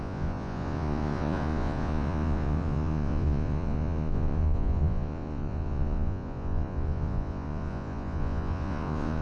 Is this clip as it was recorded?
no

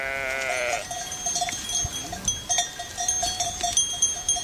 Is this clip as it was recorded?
yes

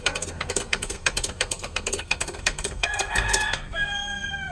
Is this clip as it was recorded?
no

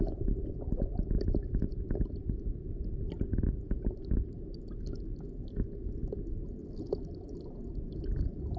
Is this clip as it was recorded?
yes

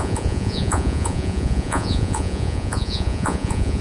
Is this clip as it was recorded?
no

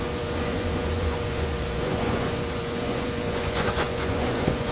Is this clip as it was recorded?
no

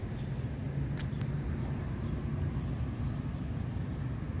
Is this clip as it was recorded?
yes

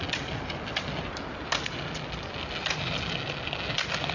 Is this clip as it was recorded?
yes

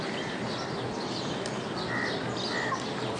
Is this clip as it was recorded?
yes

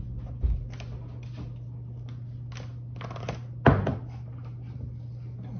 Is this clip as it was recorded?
yes